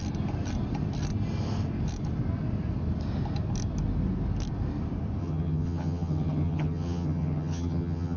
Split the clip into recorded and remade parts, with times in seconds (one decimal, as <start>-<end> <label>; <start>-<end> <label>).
0.0-5.2 recorded; 5.2-8.2 remade